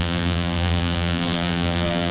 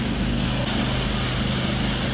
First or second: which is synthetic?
first